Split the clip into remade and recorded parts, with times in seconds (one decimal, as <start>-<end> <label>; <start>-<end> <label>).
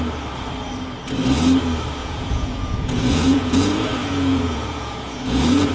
0.0-2.0 recorded; 2.0-5.7 remade